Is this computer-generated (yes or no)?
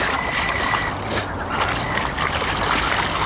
no